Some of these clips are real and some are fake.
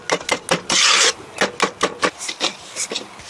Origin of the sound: real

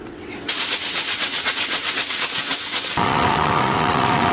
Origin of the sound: fake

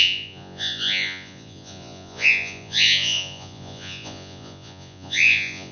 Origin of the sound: fake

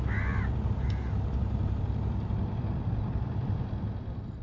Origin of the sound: real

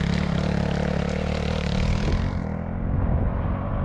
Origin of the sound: real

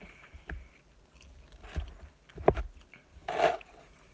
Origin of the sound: real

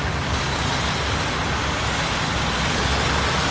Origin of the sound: real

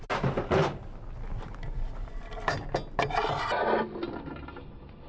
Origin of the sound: real